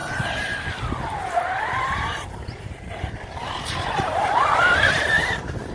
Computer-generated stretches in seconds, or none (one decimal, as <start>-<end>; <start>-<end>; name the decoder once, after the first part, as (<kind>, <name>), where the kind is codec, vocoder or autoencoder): none